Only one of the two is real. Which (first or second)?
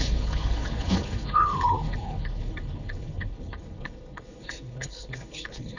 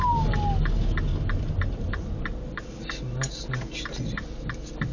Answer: second